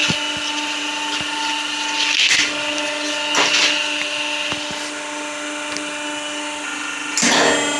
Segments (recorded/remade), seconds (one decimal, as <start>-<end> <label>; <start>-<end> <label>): 0.0-7.8 recorded